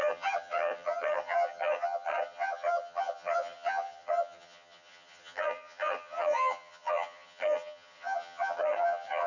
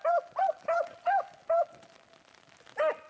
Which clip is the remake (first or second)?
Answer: first